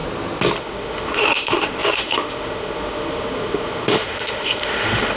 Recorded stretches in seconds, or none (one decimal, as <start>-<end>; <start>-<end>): 0.0-0.6